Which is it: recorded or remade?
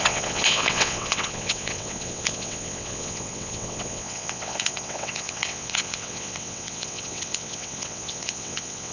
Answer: remade